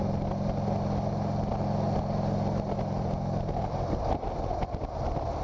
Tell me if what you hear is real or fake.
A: real